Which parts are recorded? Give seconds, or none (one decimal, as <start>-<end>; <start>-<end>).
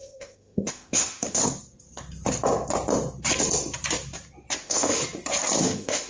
1.4-4.6; 5.0-5.6